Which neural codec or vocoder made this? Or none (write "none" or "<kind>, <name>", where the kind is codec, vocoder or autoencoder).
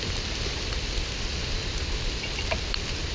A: none